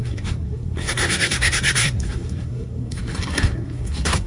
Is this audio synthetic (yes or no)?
yes